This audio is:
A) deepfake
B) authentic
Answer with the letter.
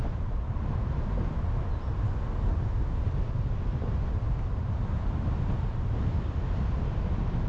B